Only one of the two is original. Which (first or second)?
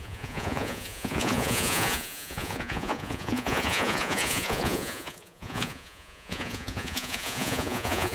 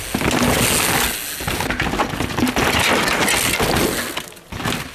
second